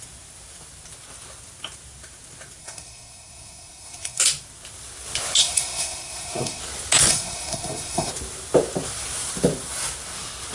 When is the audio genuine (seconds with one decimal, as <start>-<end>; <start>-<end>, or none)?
0.0-2.6; 4.2-5.4; 6.6-7.1; 8.1-10.5